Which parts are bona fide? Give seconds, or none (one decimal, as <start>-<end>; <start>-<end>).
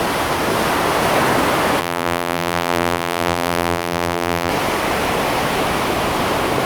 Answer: 0.0-1.8; 4.5-6.7